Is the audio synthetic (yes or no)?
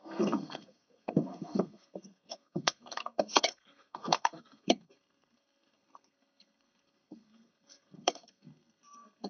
yes